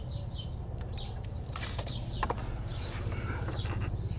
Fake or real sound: fake